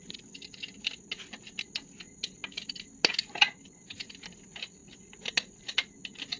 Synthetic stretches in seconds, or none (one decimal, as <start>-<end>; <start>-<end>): none